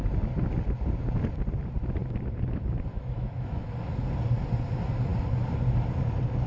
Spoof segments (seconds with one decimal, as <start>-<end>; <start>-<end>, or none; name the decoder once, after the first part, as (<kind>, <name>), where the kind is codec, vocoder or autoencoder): 2.9-3.6 (autoencoder, DAC-VAE)